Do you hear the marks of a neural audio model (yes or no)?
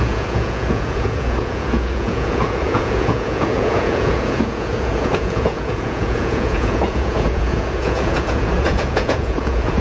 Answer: yes